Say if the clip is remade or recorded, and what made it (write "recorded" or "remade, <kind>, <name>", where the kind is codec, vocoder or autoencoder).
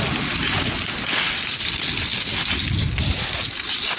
recorded